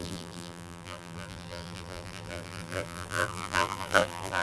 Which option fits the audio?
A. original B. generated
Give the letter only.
B